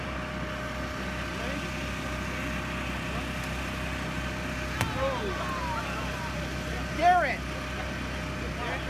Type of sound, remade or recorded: recorded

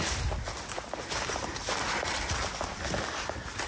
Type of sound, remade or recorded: recorded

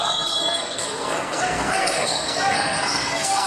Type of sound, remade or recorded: remade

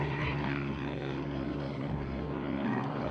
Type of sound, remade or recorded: remade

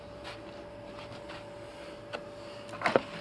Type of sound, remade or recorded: recorded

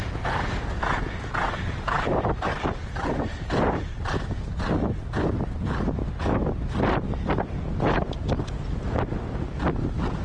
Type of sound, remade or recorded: recorded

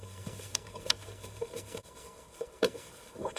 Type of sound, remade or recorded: remade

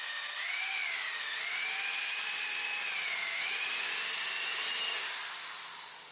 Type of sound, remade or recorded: recorded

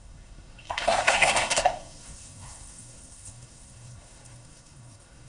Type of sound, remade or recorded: remade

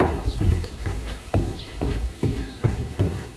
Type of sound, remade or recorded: remade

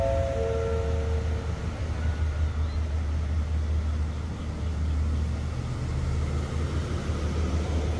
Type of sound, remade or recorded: recorded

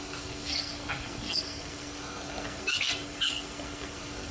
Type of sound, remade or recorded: remade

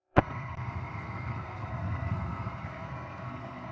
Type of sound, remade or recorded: remade